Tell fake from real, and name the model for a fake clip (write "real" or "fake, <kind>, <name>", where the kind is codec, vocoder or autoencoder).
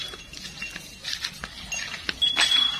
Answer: real